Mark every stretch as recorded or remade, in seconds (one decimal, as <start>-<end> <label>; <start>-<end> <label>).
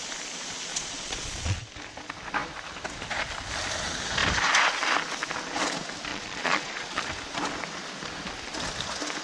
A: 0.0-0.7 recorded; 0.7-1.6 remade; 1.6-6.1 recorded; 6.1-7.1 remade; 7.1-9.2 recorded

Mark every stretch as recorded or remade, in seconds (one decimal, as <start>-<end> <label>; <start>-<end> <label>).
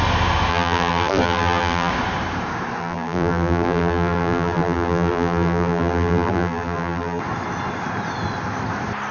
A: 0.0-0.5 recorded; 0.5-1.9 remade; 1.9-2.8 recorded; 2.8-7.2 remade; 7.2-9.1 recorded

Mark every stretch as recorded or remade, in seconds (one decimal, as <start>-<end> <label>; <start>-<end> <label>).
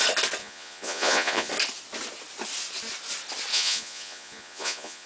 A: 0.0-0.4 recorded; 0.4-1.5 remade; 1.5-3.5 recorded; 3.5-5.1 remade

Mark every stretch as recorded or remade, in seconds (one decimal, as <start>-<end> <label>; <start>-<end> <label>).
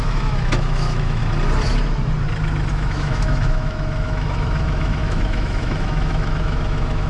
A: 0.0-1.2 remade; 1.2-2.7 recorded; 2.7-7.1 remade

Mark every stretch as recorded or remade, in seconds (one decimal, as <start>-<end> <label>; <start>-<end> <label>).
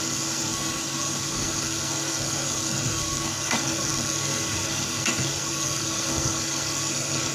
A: 0.0-7.3 remade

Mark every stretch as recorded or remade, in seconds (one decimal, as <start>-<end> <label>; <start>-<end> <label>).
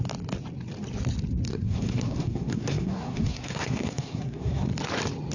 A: 0.0-1.5 recorded; 1.5-4.7 remade; 4.7-5.3 recorded